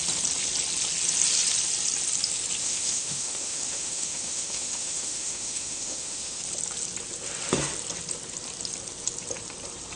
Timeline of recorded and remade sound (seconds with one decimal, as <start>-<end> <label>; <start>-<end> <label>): 0.0-2.6 recorded; 2.6-6.4 remade; 6.4-10.0 recorded